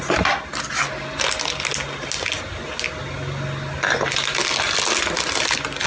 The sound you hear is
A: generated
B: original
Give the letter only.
B